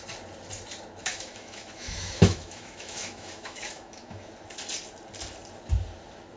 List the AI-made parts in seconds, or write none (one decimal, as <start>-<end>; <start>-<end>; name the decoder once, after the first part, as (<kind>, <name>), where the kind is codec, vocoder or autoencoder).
1.0-4.3 (autoencoder, DAC-VAE)